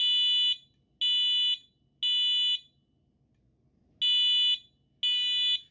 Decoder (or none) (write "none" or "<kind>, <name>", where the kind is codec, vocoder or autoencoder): none